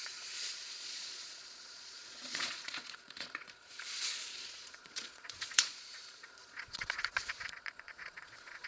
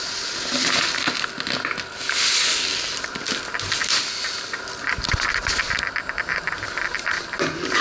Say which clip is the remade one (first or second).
first